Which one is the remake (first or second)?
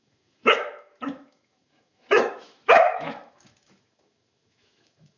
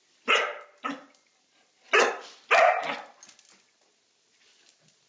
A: first